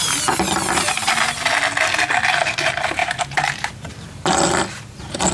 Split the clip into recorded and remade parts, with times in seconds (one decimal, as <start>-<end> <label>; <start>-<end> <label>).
0.0-3.0 recorded; 3.0-3.9 remade; 3.9-5.3 recorded